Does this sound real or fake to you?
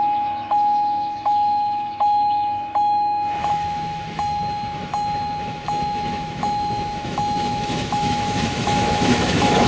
fake